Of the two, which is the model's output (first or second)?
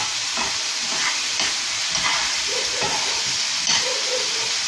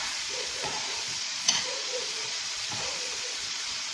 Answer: second